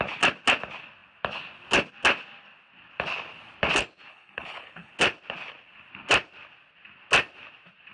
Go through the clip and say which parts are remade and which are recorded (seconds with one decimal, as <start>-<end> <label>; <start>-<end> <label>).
0.0-4.1 recorded; 4.1-4.9 remade; 4.9-7.9 recorded